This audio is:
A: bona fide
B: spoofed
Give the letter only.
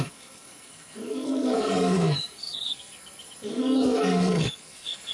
B